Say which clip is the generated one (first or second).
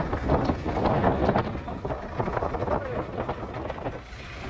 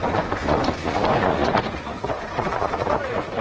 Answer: second